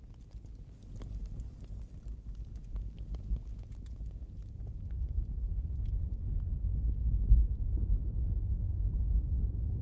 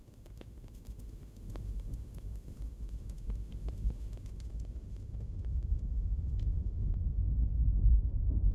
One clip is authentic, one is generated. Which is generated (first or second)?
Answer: second